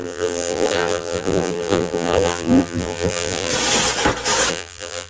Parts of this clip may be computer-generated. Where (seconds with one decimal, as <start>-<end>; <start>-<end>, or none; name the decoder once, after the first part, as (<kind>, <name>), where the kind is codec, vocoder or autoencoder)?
0.0-3.5 (vocoder, BigVGAN v2); 4.5-5.1